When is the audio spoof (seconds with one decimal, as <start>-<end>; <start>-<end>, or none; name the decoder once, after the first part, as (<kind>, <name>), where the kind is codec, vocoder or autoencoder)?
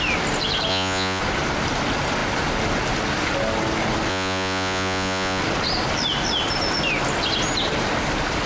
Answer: 0.7-1.2 (vocoder, Vocos); 4.1-5.4